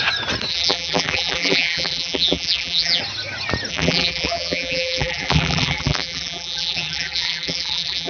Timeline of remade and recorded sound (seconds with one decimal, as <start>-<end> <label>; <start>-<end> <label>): 0.0-0.5 recorded; 0.5-3.0 remade; 3.0-3.7 recorded; 3.7-8.1 remade